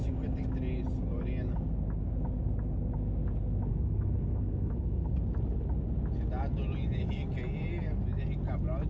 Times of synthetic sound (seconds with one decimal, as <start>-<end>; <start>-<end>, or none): 3.7-5.2